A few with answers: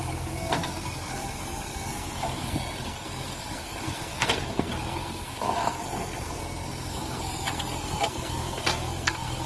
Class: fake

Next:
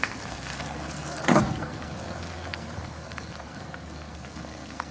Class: fake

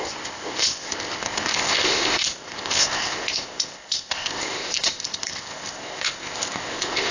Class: fake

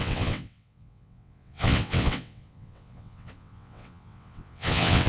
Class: fake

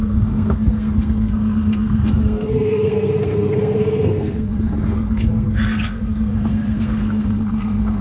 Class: fake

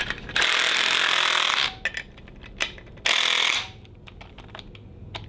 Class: real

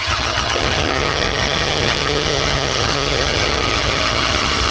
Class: fake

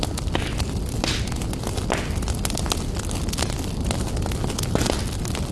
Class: real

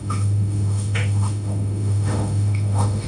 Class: fake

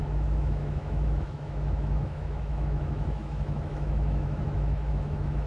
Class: fake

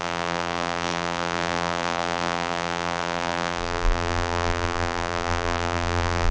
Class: fake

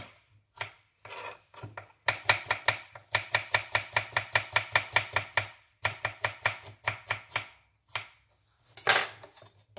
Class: real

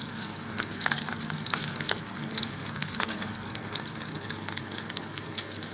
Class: fake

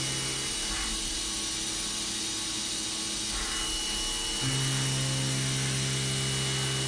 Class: real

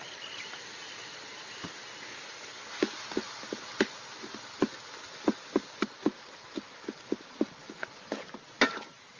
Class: real